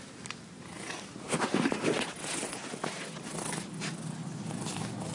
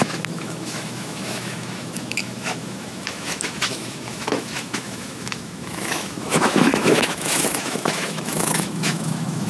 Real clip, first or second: first